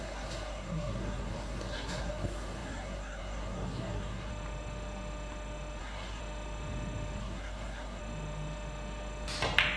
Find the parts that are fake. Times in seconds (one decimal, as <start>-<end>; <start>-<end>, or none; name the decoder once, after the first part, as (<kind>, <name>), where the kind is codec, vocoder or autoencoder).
0.0-4.3 (codec, SNAC); 5.8-6.2; 7.2-8.0